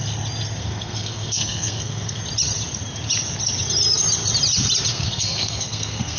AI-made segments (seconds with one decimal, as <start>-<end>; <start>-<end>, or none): 0.6-2.2; 4.9-6.2